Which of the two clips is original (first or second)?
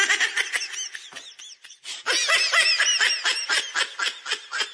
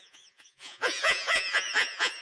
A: first